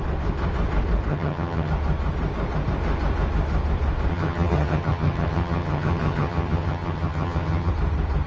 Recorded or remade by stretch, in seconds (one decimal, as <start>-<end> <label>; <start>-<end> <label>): 0.0-1.1 recorded; 1.1-1.7 remade; 1.7-4.1 recorded; 4.1-7.7 remade; 7.7-8.3 recorded